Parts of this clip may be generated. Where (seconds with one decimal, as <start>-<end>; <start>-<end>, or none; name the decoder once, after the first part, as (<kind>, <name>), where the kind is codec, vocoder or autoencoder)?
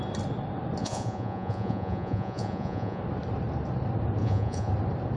0.8-3.0 (vocoder, Vocos); 4.2-4.7